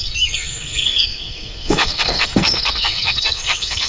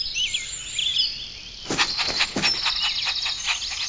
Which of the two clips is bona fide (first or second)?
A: second